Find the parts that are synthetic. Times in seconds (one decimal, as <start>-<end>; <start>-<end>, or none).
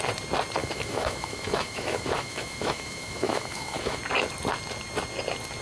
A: 0.6-4.0